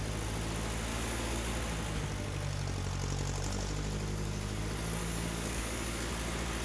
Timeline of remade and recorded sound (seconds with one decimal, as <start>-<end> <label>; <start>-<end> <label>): 0.0-0.9 recorded; 0.9-1.5 remade; 1.5-4.1 recorded; 4.1-4.6 remade; 4.6-5.0 recorded; 5.0-6.1 remade; 6.1-6.6 recorded